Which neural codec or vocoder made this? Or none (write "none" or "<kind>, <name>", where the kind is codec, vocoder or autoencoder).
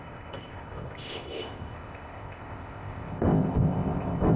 codec, ZipCodec